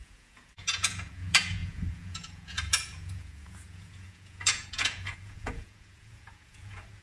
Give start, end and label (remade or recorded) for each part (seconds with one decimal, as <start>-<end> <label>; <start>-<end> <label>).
0.0-7.0 remade